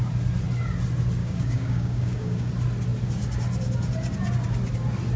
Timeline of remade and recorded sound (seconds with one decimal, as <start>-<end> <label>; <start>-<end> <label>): 0.0-1.2 recorded; 1.2-2.5 remade; 2.5-5.2 recorded